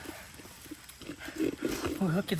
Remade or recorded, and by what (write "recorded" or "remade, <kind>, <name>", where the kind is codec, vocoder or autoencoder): recorded